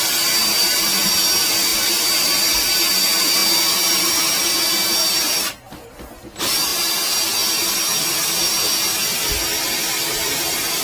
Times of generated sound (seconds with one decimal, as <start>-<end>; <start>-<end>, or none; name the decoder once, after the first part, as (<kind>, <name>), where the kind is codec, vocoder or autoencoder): none

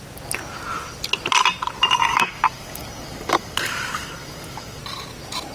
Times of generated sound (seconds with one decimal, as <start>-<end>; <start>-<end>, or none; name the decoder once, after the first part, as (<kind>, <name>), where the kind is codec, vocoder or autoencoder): 2.1-4.8 (codec, DAC)

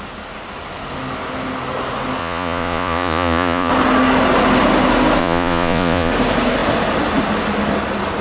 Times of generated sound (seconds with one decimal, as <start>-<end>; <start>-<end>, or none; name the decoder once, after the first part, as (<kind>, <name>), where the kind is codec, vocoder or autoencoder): 2.2-3.7 (vocoder, Vocos); 5.2-6.1

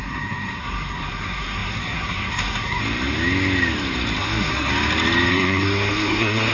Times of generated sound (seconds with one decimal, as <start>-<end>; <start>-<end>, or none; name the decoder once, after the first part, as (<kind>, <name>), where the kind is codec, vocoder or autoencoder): 0.0-2.8 (codec, SNAC); 4.2-4.7; 5.3-6.5

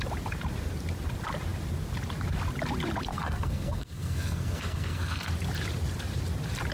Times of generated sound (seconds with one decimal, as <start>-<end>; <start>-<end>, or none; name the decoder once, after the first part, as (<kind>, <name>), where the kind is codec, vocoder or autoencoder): 3.1-5.3 (codec, SNAC)

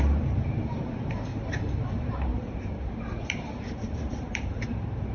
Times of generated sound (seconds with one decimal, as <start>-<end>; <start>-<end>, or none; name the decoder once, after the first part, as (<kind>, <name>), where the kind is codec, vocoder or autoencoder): 0.0-5.1 (vocoder, BigVGAN v2)

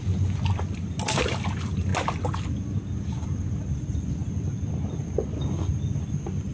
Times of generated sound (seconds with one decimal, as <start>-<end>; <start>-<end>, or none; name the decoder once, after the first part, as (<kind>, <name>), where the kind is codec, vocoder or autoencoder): none